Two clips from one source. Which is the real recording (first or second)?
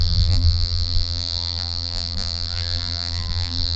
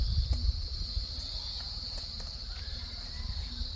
second